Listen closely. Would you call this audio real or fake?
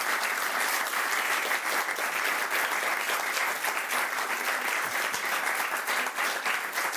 real